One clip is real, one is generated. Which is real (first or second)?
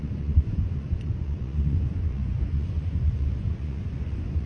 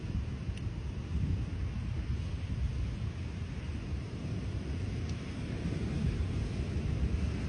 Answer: second